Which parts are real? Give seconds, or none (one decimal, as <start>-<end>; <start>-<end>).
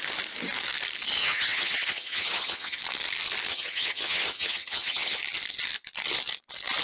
0.0-1.2; 2.8-3.5; 5.2-6.8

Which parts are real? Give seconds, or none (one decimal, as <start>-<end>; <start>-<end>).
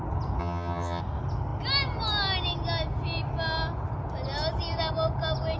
0.0-0.4; 1.0-5.6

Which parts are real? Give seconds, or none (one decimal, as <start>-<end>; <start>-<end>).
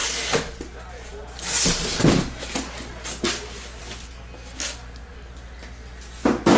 0.0-6.6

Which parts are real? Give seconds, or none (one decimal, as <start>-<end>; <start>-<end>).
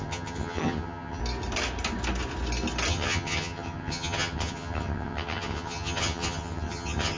1.2-2.9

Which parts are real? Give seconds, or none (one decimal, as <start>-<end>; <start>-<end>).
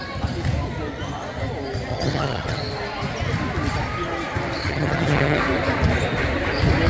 0.0-1.9; 2.6-4.6; 5.4-6.9